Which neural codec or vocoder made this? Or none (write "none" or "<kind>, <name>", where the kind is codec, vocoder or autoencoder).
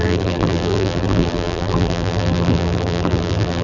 vocoder, BigVGAN v2